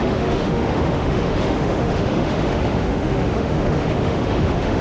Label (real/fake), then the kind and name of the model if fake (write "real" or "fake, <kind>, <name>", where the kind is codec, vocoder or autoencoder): fake, autoencoder, DAC-VAE